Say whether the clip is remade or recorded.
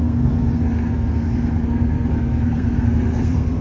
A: remade